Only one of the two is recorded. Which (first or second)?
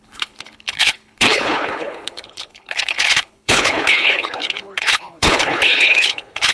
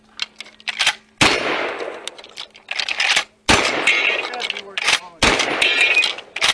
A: second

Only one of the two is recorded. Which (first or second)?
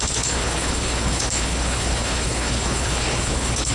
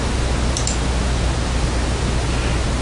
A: second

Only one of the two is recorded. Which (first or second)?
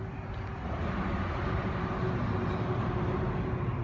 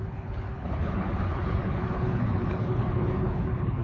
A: first